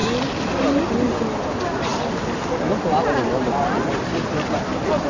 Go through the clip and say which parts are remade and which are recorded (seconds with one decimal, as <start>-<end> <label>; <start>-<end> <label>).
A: 0.0-5.1 recorded